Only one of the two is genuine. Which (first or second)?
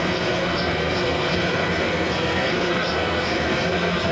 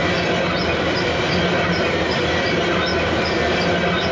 second